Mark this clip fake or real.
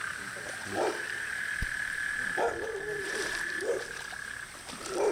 fake